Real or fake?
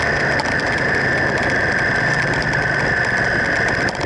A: real